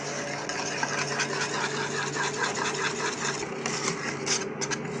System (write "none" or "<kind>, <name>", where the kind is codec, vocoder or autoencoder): none